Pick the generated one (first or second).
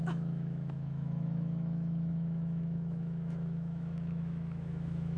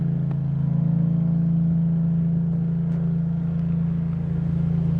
first